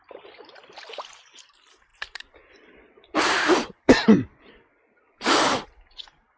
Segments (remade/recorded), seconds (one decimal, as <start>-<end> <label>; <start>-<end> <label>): 0.0-6.4 remade

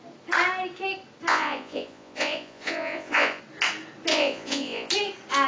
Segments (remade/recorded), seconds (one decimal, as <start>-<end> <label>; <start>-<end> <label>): 0.0-1.3 recorded; 1.3-3.4 remade; 3.4-4.1 recorded; 4.1-4.9 remade; 4.9-5.5 recorded